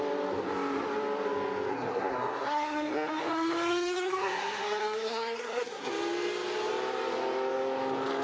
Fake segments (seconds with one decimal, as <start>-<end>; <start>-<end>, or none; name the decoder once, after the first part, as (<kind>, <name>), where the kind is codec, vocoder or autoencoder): 1.7-5.9 (codec, SNAC)